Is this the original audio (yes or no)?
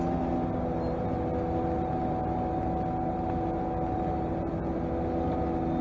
yes